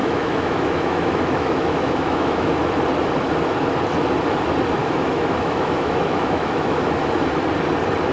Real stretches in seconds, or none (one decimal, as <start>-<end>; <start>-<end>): 2.5-4.8; 6.8-8.1

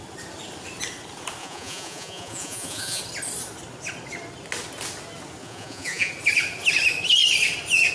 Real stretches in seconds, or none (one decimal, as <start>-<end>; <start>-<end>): 0.0-1.4; 3.0-5.4; 6.1-7.9

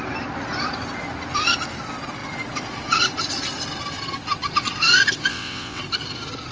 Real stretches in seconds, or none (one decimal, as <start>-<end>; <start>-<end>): 0.0-5.3; 5.8-6.5

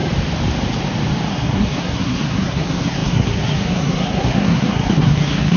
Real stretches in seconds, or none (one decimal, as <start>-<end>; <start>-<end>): 0.0-1.3

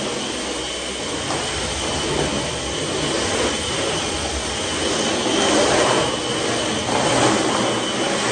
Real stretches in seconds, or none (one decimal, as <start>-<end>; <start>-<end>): 0.0-8.3

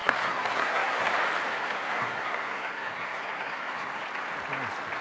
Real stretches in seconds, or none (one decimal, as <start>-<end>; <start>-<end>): 1.1-1.5; 4.0-5.0

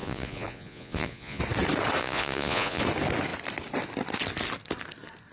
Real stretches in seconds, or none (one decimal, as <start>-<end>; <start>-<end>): 1.4-2.0; 2.8-5.3

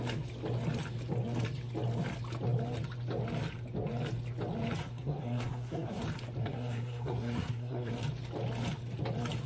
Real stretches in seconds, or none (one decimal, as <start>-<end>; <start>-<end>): 0.0-4.8; 6.0-6.4; 7.9-9.5